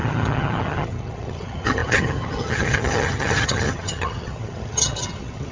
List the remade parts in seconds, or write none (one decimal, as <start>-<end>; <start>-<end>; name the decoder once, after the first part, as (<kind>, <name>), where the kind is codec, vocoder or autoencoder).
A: 0.0-5.5 (vocoder, HiFi-GAN)